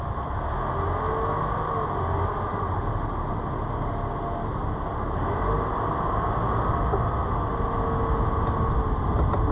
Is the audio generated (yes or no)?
no